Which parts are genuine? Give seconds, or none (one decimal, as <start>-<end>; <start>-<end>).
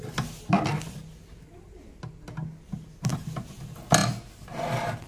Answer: 0.0-5.1